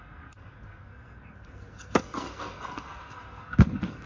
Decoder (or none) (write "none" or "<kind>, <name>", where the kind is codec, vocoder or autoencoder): codec, SNAC